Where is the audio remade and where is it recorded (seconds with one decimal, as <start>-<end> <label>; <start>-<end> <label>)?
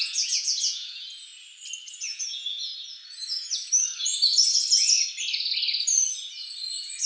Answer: 0.0-1.3 remade; 1.3-1.8 recorded; 1.8-2.7 remade; 2.7-7.1 recorded